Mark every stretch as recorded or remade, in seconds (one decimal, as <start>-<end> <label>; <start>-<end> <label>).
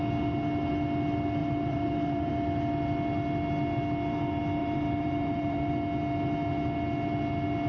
0.0-1.4 recorded; 1.4-2.3 remade; 2.3-4.6 recorded; 4.6-5.7 remade; 5.7-7.7 recorded